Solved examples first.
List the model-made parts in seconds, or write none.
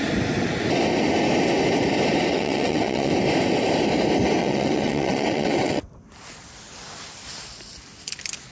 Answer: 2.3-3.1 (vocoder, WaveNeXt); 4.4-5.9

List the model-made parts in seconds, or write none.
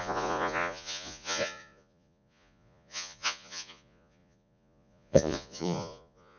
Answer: 0.0-6.4 (vocoder, Vocos)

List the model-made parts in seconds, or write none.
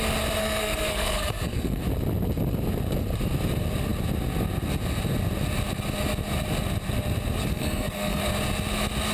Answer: 0.4-1.8 (codec, SNAC); 7.5-8.2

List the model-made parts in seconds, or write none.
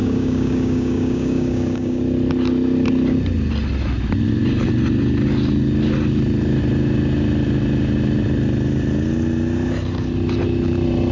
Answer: 0.0-2.0 (codec, DAC)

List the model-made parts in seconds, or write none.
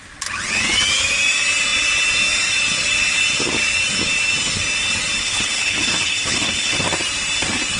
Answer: 5.2-6.8 (codec, HILCodec)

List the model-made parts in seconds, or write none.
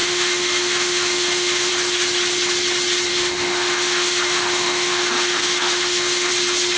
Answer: 0.0-1.7 (autoencoder, DAC-VAE); 3.1-6.3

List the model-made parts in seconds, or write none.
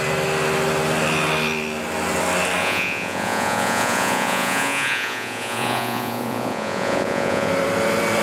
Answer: 2.6-7.5 (vocoder, Vocos)